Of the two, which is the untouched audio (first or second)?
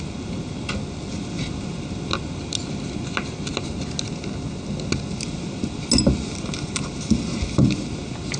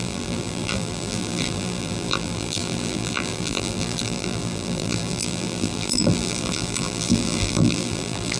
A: first